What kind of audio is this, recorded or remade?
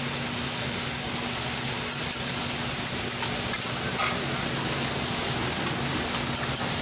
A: recorded